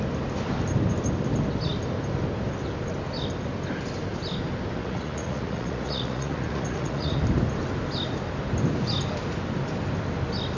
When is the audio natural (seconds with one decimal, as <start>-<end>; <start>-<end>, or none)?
0.0-4.8; 7.2-10.6